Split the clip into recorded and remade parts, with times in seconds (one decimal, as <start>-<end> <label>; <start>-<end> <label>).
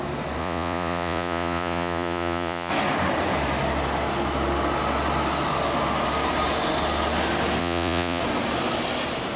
0.0-0.4 recorded; 0.4-2.7 remade; 2.7-7.6 recorded; 7.6-8.2 remade; 8.2-9.4 recorded